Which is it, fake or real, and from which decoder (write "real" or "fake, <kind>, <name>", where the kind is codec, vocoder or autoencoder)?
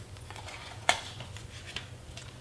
fake, vocoder, Vocos